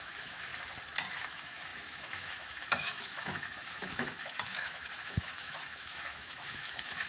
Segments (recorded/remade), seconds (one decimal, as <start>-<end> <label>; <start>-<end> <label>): 0.0-0.5 remade; 0.5-1.1 recorded; 1.1-7.1 remade